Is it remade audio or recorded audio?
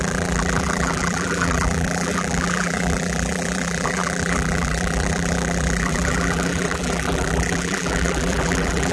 remade